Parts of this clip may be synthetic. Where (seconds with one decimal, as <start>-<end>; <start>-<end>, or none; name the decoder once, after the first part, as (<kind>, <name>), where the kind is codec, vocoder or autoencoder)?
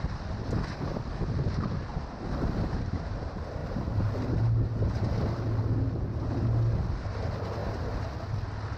1.9-3.1 (vocoder, BigVGAN v2); 3.6-5.0; 7.6-8.1